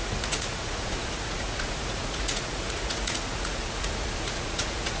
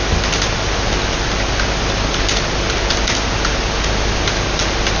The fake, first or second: first